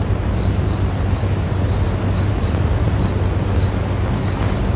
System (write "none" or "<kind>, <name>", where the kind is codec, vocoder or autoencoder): none